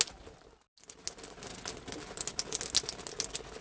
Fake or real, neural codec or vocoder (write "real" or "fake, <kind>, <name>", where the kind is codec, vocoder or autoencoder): real